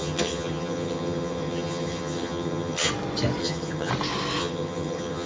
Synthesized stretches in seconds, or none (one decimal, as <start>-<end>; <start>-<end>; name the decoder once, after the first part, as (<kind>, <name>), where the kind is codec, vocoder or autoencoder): 0.0-2.9 (vocoder, HiFi-GAN); 3.4-3.9; 4.4-5.3